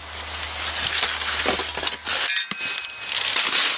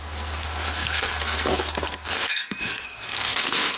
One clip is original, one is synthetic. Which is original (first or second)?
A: first